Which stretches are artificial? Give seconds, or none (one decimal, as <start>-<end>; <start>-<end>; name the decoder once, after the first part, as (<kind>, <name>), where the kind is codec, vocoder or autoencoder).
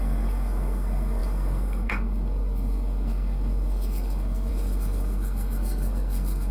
0.0-6.5 (codec, SNAC)